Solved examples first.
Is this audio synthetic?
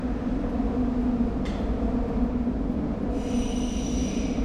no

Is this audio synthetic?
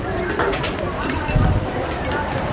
yes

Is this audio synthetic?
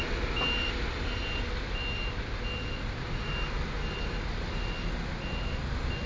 no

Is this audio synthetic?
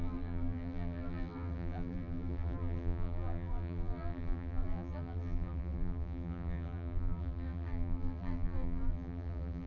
yes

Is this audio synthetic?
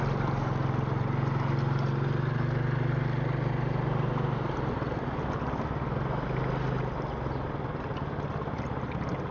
no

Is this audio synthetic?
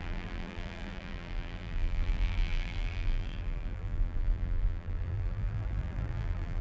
yes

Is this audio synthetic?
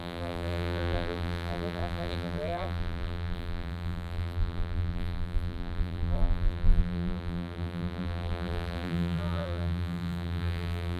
yes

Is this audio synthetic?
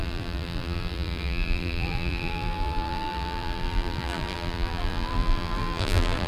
yes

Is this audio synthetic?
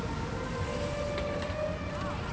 no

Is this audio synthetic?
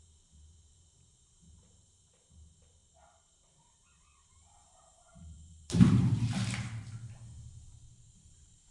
yes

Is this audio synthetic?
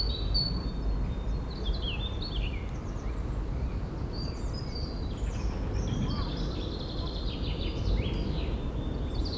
no